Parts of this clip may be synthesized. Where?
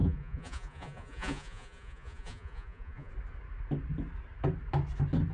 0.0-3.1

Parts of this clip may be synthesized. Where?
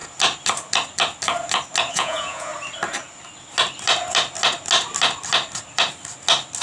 1.9-2.5